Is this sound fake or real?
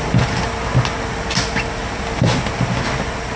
real